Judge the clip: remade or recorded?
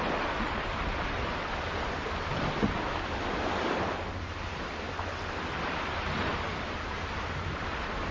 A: recorded